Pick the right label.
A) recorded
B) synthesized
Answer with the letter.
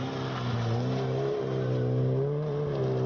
A